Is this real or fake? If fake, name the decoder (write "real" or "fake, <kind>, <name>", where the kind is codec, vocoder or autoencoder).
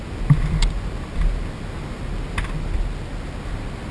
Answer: real